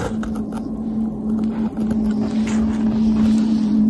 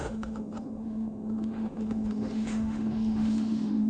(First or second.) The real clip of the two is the first